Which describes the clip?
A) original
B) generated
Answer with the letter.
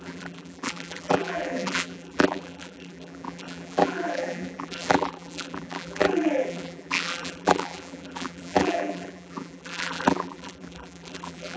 B